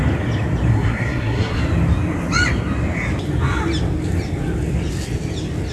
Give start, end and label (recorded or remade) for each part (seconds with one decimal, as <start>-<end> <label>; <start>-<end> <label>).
0.0-0.7 recorded; 0.7-1.6 remade; 1.6-5.7 recorded